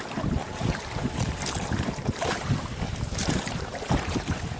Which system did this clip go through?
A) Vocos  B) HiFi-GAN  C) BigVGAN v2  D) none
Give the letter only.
C